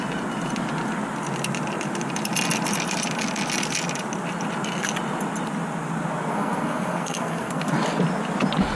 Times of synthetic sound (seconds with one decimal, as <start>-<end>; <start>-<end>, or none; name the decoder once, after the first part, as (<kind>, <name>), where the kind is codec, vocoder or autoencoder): 6.3-7.7 (codec, SNAC)